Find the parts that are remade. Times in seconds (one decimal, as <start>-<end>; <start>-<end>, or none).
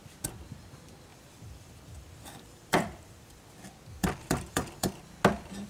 1.1-3.4; 4.0-5.0